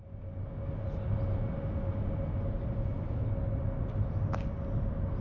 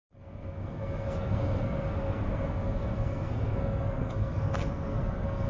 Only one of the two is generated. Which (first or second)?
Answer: second